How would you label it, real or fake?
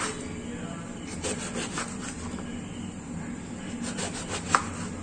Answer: real